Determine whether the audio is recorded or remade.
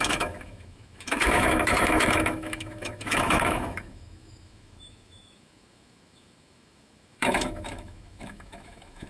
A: remade